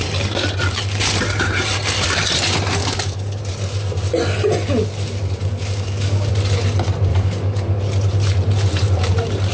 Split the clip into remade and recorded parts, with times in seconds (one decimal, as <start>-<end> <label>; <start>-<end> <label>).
0.0-2.8 recorded; 2.8-3.4 remade; 3.4-5.4 recorded; 5.4-6.3 remade; 6.3-7.1 recorded; 7.1-7.8 remade; 7.8-9.5 recorded